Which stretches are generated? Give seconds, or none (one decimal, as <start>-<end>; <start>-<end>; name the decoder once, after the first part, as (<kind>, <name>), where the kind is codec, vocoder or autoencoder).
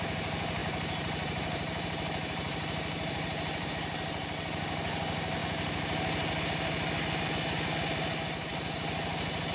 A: 0.6-3.7 (vocoder, BigVGAN v2)